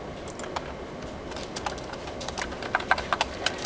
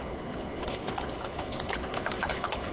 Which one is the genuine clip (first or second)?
first